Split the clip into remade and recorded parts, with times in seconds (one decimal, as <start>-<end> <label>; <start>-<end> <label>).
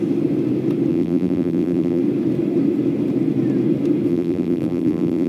0.0-0.9 recorded; 0.9-2.0 remade; 2.0-4.1 recorded; 4.1-5.3 remade